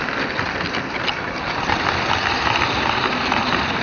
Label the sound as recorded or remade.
recorded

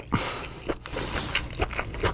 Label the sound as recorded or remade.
recorded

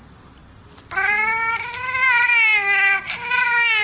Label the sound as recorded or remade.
recorded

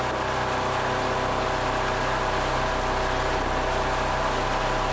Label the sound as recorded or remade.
recorded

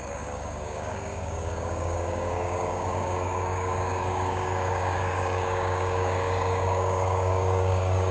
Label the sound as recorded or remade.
remade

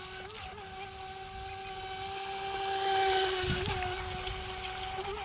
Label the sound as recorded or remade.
recorded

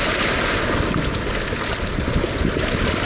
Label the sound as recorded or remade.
recorded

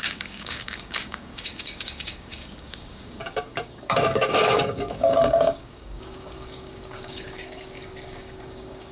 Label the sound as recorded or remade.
remade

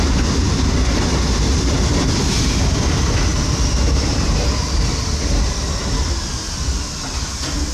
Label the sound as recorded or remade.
recorded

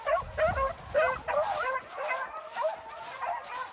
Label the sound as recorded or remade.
recorded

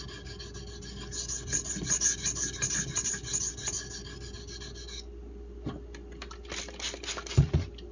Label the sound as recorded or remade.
recorded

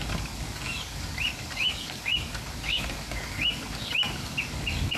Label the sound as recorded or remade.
remade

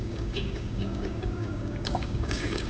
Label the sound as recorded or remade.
remade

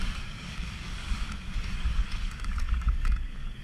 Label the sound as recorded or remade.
remade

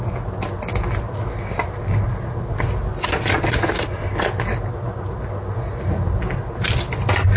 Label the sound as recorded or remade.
recorded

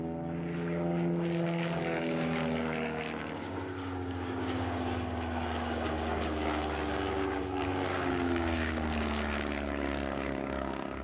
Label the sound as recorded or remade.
remade